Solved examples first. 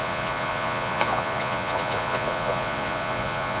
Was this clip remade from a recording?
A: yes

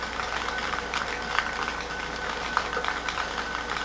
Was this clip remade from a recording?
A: no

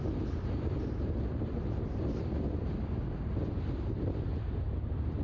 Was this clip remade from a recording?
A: no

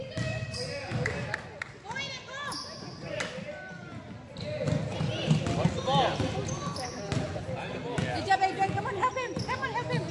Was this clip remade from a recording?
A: no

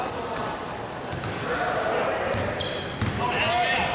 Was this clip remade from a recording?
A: no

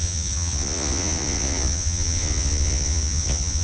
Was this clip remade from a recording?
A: yes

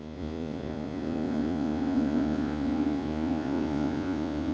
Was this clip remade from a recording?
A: yes